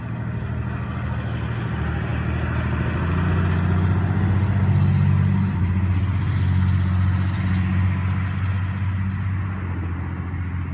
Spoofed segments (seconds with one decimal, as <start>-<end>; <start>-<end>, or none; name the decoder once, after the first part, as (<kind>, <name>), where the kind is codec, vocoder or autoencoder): none